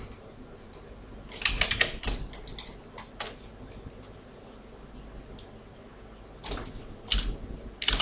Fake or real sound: real